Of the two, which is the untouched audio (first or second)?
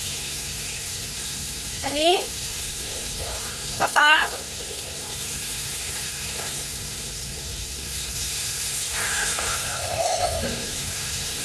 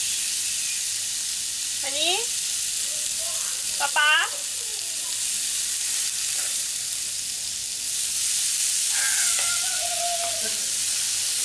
second